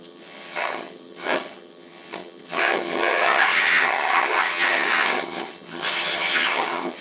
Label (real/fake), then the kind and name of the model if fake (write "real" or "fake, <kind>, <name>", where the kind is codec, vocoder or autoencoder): fake, vocoder, HiFi-GAN